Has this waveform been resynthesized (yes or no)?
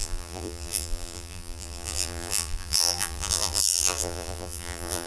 yes